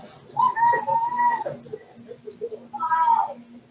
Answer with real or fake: real